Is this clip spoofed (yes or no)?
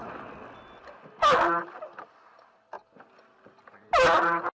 no